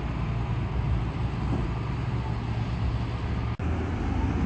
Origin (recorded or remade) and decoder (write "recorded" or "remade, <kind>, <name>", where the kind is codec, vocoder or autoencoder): recorded